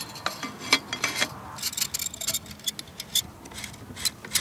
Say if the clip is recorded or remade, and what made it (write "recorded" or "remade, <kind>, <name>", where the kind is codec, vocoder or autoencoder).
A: recorded